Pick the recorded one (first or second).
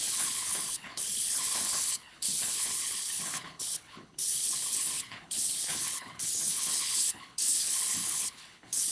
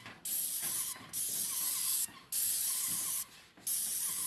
second